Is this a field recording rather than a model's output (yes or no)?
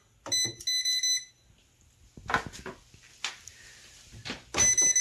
yes